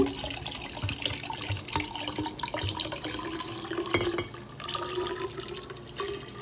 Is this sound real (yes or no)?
yes